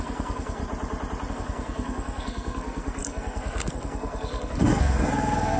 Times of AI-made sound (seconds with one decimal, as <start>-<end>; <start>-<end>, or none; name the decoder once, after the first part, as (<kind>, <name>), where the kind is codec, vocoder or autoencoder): 0.0-0.6 (codec, SNAC); 1.3-5.6